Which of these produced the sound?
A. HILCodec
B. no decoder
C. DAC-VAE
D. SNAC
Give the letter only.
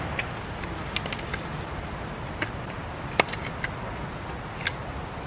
B